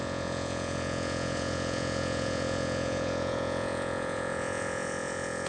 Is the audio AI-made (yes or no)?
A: yes